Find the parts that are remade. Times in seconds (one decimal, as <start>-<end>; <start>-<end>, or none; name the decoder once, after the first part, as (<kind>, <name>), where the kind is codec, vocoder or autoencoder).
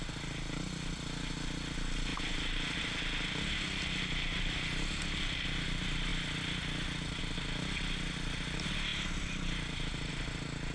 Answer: 8.9-10.1 (vocoder, BigVGAN v2)